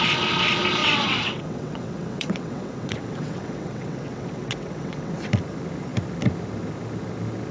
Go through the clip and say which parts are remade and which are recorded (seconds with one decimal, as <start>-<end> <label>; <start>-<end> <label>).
0.0-0.8 recorded; 0.8-5.3 remade; 5.3-7.5 recorded